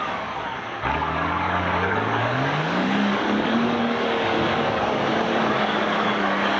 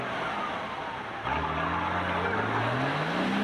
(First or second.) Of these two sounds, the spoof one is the first